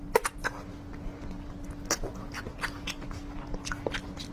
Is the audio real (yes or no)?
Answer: yes